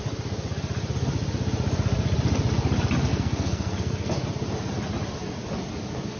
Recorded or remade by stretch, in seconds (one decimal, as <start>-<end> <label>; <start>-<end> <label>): 0.0-3.1 recorded; 3.1-4.1 remade; 4.1-6.2 recorded